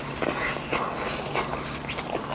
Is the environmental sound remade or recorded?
recorded